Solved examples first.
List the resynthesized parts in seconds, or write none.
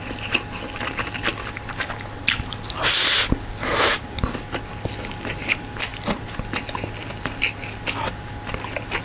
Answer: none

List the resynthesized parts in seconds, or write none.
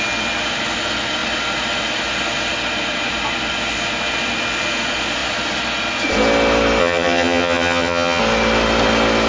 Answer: 6.8-8.2 (vocoder, HiFi-GAN)